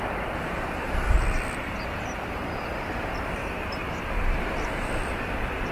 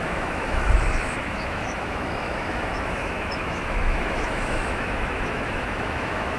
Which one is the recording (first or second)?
first